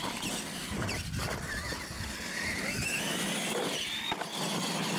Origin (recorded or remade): recorded